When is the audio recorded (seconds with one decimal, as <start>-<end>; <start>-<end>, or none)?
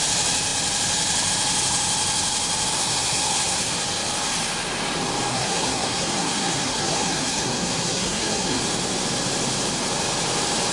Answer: 0.0-2.7; 3.7-5.3; 8.6-10.7